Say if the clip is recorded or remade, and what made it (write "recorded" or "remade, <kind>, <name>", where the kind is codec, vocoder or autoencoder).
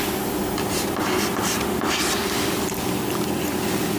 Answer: recorded